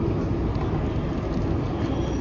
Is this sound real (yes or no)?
yes